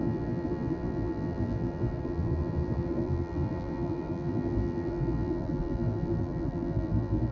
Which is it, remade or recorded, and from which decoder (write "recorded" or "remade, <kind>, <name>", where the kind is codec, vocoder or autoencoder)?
remade, vocoder, BigVGAN v2